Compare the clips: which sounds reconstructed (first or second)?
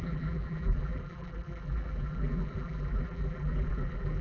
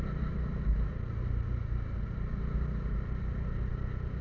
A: first